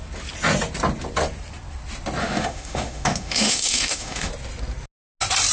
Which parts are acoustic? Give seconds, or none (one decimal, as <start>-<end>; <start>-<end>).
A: 0.0-2.2; 4.3-5.5